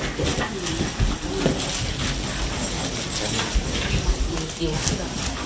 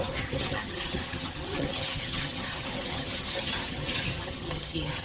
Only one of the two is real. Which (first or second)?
first